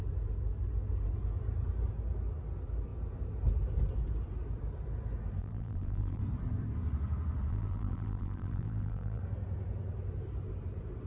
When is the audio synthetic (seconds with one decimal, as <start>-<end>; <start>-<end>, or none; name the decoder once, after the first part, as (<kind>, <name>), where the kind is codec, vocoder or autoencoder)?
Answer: 5.4-6.2 (vocoder, BigVGAN v2); 7.5-9.2

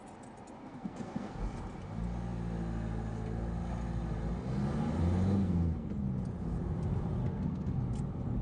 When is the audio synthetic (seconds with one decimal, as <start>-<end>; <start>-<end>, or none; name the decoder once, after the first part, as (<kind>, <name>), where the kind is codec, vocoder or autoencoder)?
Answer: 0.6-1.4 (codec, SNAC); 5.4-5.9; 7.2-7.8

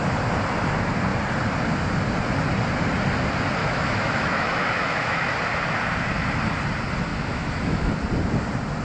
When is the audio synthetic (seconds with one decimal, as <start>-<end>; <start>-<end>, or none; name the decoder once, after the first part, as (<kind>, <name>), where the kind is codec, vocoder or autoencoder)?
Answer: 3.6-5.3 (autoencoder, DAC-VAE); 7.1-7.9

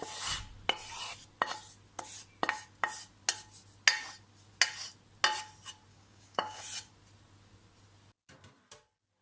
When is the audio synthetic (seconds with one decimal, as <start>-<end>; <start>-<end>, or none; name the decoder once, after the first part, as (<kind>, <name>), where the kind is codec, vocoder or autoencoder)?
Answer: 5.9-6.6 (codec, DAC)